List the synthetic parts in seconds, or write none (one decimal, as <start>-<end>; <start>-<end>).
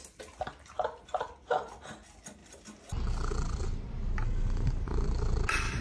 none